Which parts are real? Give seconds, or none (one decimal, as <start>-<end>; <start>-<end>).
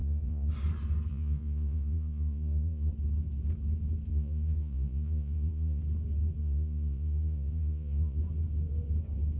0.5-1.1; 2.9-4.1; 5.8-6.4; 8.2-9.4